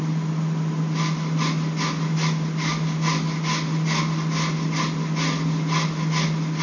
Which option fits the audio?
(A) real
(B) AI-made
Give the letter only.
A